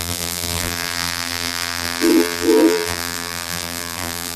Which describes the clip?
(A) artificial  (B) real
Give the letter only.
A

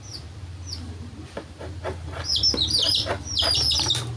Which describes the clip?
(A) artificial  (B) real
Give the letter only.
A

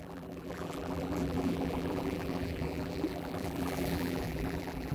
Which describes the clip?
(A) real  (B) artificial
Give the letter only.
B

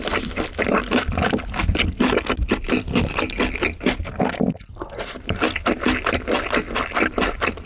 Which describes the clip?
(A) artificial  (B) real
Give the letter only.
B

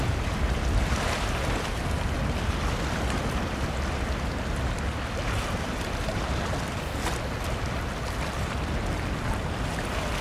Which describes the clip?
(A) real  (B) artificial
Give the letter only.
A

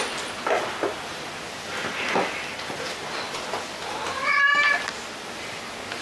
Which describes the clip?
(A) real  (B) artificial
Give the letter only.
A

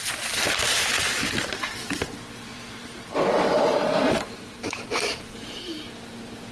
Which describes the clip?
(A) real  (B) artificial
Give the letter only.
B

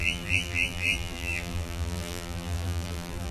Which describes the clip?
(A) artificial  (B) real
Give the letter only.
A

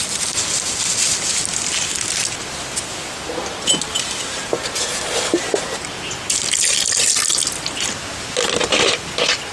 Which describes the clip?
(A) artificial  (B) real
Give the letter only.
B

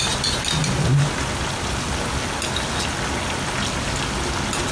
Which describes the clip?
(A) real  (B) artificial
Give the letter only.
A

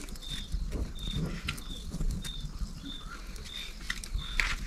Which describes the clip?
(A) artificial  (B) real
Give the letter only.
B